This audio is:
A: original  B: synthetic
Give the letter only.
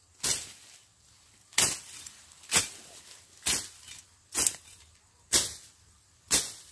A